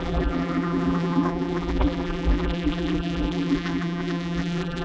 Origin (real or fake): fake